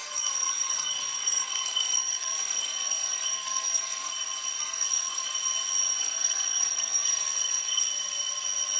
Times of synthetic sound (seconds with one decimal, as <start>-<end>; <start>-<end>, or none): 0.0-4.1; 4.6-5.3; 6.0-7.9